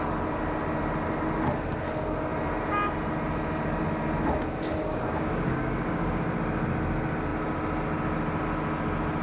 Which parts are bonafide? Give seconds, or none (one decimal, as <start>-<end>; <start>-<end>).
0.0-4.9; 6.2-9.2